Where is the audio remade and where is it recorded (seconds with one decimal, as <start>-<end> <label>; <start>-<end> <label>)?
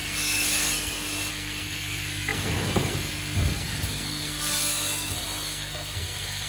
0.0-6.5 remade